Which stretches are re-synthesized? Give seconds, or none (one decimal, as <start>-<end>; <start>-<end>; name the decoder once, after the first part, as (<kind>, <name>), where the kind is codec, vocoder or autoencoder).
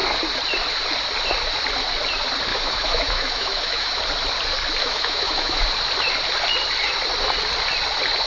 2.5-4.0 (autoencoder, DAC-VAE); 4.8-5.6